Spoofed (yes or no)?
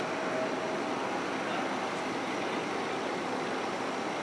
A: no